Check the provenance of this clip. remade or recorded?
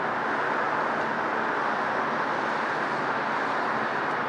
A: recorded